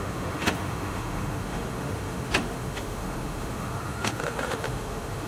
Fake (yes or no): yes